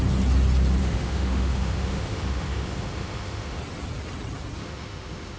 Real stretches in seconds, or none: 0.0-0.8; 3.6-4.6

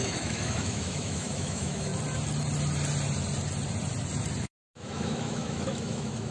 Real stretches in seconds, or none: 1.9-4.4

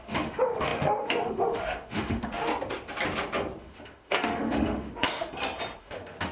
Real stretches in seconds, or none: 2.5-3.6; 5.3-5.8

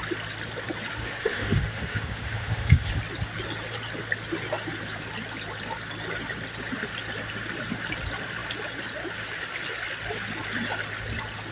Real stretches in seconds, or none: 0.0-1.0; 2.9-11.5

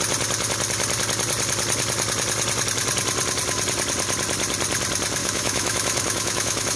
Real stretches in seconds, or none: 0.0-5.2

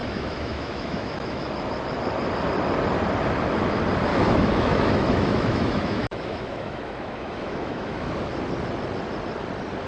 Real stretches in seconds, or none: 1.5-4.1; 8.1-9.9

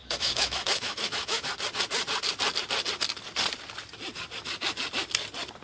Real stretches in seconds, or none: 1.5-5.6

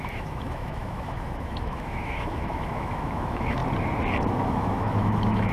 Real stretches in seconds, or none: 3.6-4.3